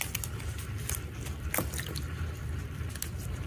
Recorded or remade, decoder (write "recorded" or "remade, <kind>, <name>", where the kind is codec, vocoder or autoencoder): recorded